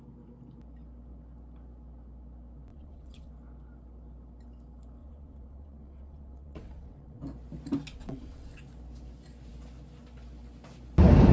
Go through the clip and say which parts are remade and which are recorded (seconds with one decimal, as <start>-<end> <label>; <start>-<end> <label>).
0.0-2.7 recorded; 2.7-3.3 remade; 3.3-5.0 recorded; 5.0-7.2 remade; 7.2-7.9 recorded; 7.9-8.6 remade; 8.6-11.3 recorded